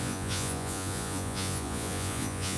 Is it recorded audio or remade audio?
remade